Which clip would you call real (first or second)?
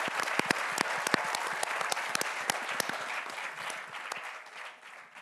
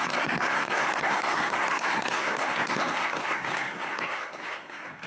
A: first